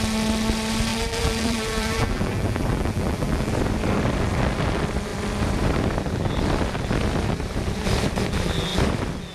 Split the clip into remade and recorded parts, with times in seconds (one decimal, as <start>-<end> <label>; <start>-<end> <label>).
0.0-0.9 recorded; 0.9-3.6 remade; 3.6-9.3 recorded